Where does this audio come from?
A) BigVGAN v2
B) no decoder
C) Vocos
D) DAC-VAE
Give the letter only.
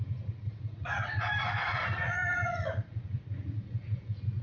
C